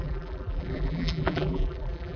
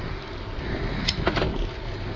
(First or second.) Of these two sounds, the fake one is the first